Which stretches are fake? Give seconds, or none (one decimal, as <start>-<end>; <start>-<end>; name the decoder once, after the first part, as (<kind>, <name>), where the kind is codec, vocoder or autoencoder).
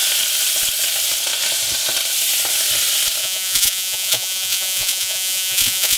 3.2-6.0 (vocoder, Vocos)